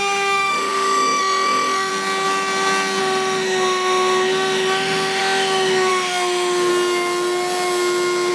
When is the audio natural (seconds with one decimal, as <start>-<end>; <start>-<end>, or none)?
1.9-3.0; 6.7-8.3